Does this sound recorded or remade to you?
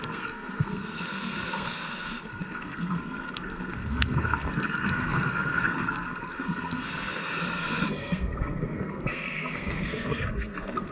remade